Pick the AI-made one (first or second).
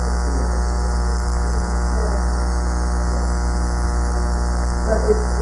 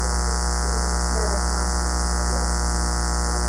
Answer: first